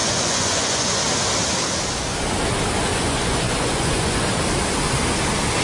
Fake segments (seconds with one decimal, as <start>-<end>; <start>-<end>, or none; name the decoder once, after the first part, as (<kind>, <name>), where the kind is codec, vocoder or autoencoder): 0.0-1.0 (vocoder, Vocos); 2.9-4.2